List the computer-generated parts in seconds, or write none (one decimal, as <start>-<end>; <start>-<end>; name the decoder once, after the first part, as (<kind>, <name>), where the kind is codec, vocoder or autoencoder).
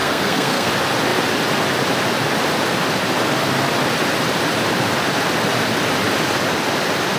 0.0-0.7 (codec, SNAC)